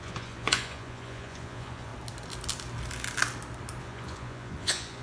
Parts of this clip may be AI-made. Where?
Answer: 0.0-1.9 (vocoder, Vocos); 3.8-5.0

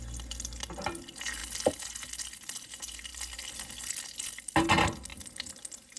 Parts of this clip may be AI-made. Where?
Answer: none